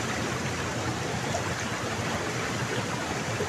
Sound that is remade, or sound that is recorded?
recorded